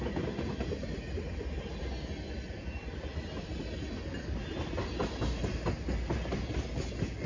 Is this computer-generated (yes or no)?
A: no